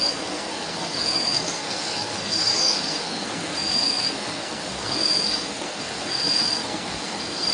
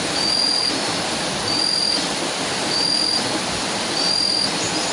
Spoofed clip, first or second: first